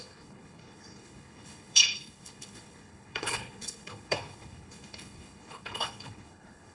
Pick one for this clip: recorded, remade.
remade